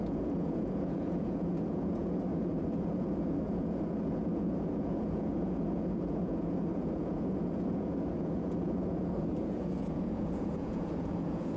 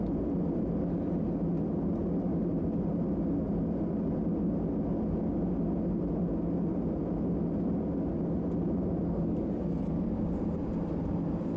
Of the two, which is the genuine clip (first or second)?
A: second